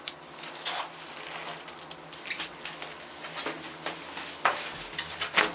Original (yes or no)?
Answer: yes